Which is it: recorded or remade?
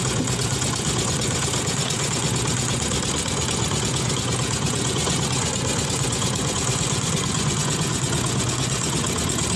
remade